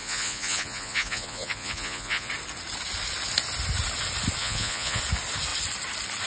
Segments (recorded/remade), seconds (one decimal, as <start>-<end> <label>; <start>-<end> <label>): 0.0-2.3 remade; 2.3-4.4 recorded; 4.4-5.0 remade; 5.0-6.3 recorded